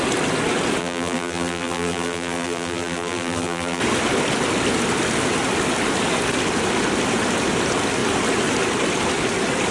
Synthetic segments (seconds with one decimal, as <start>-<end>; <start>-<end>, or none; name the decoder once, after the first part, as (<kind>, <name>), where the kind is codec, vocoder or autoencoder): 0.8-3.8 (vocoder, BigVGAN v2)